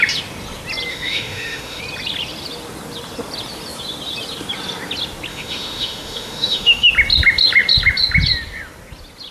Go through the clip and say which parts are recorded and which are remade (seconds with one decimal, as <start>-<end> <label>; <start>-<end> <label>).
0.0-0.9 recorded; 0.9-1.8 remade; 1.8-5.3 recorded; 5.3-6.9 remade; 6.9-9.3 recorded